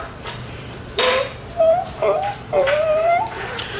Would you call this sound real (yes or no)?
no